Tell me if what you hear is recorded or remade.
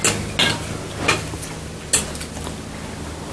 recorded